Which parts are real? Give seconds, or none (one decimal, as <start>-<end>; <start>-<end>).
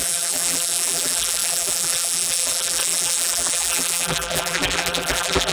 none